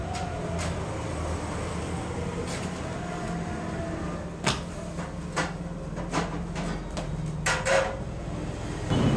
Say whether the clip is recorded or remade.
recorded